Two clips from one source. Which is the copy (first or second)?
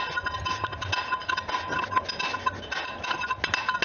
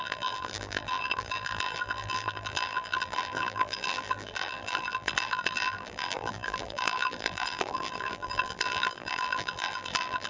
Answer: second